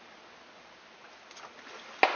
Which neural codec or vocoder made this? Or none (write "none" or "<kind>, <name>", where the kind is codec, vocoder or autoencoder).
none